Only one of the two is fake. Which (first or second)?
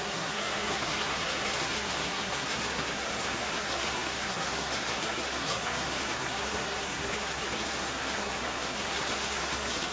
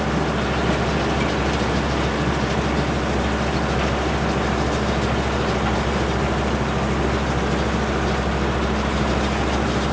first